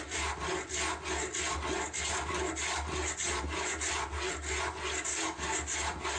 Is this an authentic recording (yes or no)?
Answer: yes